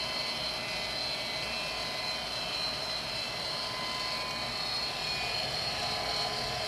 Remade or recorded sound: recorded